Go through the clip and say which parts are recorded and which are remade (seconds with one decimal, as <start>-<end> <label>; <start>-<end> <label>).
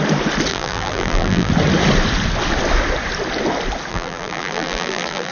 0.0-0.5 recorded; 0.5-1.5 remade; 1.5-3.9 recorded; 3.9-5.3 remade